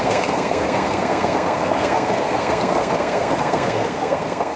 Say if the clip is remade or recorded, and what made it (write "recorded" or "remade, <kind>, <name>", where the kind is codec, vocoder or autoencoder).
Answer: remade, codec, SNAC